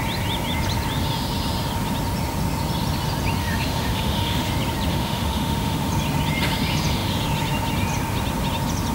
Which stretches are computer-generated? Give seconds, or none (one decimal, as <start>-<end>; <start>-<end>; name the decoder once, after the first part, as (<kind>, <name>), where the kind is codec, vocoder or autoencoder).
3.4-4.5 (autoencoder, DAC-VAE); 4.9-5.9